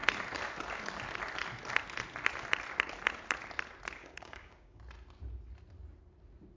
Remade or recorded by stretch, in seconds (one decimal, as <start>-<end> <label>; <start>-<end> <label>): 0.0-4.0 recorded; 4.0-4.8 remade; 4.8-6.6 recorded